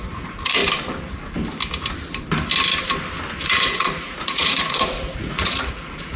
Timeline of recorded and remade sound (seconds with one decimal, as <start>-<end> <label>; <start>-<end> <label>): 0.0-0.6 remade; 0.6-3.4 recorded; 3.4-6.2 remade